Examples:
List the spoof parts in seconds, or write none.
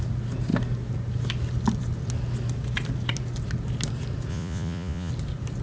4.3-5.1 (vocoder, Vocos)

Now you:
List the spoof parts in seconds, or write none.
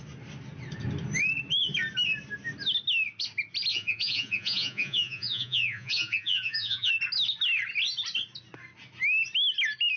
3.7-6.9 (vocoder, Vocos)